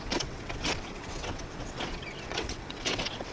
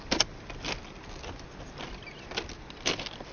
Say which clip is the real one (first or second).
second